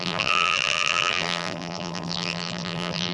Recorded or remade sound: remade